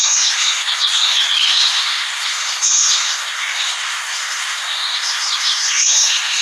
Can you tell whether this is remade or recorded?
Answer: remade